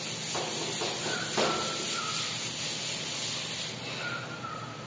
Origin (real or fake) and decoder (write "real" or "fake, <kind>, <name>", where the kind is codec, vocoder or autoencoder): real